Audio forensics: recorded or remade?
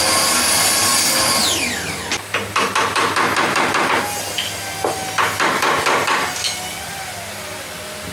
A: recorded